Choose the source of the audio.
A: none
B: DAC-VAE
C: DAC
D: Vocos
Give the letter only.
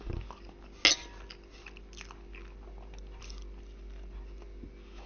A